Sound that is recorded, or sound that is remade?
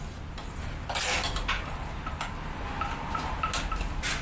recorded